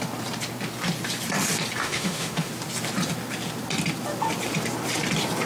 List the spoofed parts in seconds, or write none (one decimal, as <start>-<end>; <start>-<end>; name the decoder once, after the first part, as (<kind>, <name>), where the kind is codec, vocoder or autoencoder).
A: 1.8-2.5 (autoencoder, DAC-VAE)